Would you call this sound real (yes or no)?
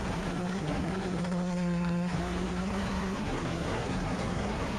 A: no